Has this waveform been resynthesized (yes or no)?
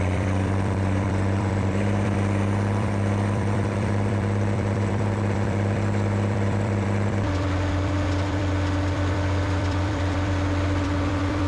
yes